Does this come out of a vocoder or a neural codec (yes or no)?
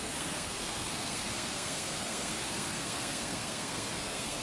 yes